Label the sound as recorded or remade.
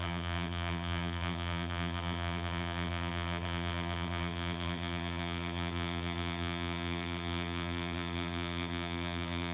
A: remade